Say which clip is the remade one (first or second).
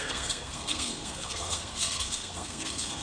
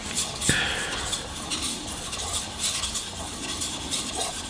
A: first